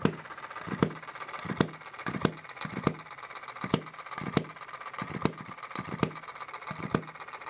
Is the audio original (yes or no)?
yes